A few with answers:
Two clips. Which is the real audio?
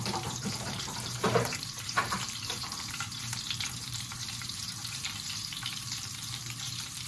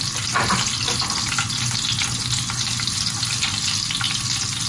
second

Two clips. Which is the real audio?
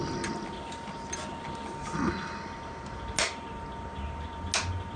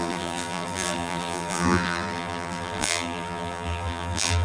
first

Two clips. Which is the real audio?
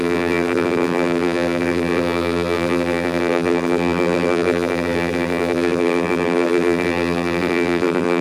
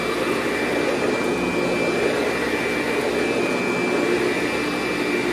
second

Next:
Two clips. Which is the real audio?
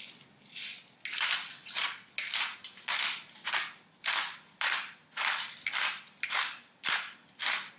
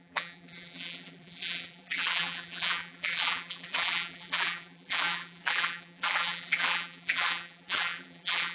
first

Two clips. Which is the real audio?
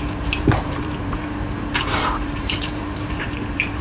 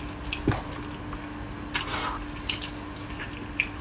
second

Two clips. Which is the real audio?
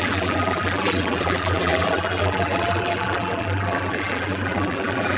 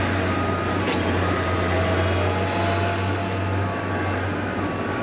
second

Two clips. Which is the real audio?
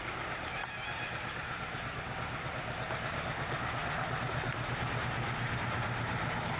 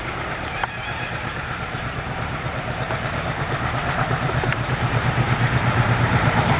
first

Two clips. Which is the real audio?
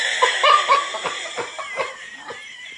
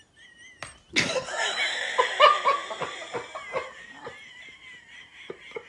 second